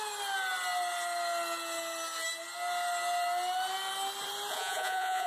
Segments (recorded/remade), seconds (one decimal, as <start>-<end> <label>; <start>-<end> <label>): 0.0-4.5 recorded; 4.5-5.3 remade